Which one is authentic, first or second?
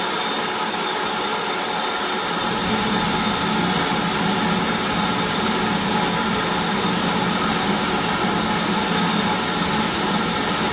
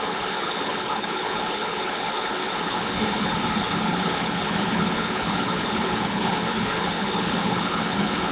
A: first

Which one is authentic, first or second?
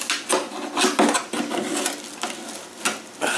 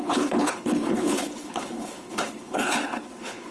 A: first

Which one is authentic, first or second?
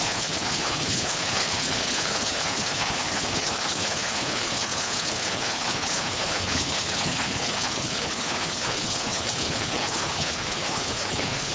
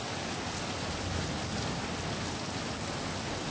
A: second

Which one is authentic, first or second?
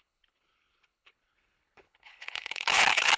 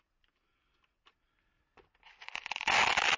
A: second